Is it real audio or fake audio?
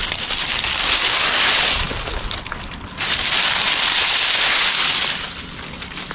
real